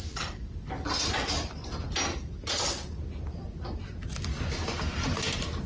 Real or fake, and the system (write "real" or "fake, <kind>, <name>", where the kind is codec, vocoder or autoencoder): real